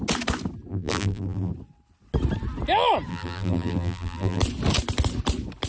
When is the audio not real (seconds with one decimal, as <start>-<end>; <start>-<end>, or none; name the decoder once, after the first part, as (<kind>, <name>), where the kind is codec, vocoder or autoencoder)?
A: 0.7-1.5 (vocoder, BigVGAN v2); 3.1-4.4